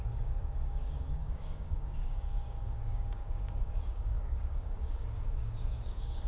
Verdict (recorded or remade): remade